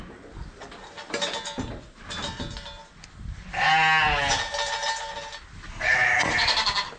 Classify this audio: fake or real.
real